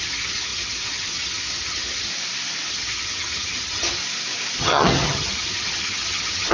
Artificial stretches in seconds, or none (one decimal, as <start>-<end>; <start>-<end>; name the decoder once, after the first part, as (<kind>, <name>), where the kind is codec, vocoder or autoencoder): 0.0-2.1 (vocoder, HiFi-GAN); 2.7-4.0; 4.6-6.5